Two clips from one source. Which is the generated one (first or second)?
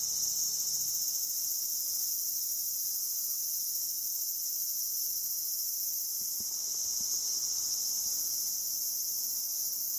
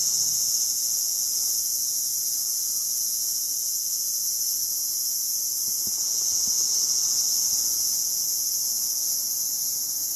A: second